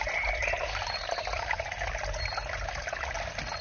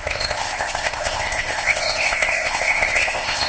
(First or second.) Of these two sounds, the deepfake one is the second